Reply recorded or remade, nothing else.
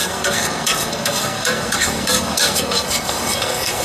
remade